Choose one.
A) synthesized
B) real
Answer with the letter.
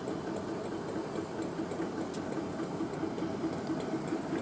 B